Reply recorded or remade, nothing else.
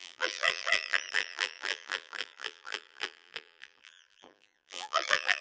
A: remade